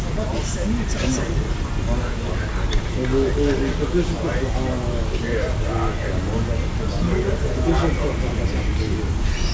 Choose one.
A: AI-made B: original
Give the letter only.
B